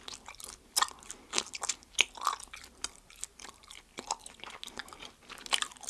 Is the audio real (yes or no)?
yes